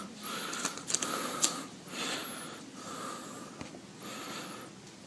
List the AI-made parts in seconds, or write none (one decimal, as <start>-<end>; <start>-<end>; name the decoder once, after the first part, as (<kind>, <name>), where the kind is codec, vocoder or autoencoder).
none

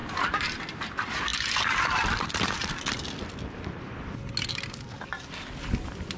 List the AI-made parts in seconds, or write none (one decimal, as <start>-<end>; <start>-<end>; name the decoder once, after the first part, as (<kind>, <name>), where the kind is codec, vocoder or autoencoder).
0.0-0.6 (vocoder, BigVGAN v2)

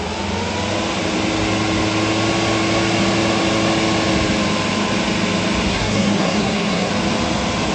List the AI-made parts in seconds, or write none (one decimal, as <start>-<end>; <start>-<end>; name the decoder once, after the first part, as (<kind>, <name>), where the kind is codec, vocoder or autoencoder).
5.7-6.9 (codec, SNAC)

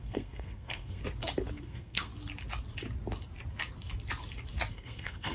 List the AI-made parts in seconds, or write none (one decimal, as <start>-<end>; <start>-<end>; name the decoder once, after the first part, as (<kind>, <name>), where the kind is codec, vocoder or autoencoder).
0.0-1.0 (codec, SNAC); 1.6-2.1; 4.7-5.3

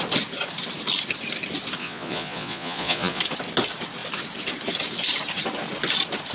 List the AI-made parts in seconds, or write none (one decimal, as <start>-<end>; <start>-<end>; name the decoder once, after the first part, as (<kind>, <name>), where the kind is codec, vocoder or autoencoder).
1.8-3.2 (vocoder, Vocos)

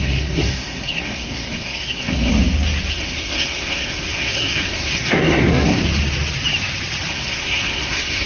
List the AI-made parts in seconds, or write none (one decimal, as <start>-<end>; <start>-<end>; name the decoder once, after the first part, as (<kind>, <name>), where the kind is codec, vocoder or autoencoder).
0.0-2.3 (codec, SNAC); 2.9-5.8; 7.1-8.3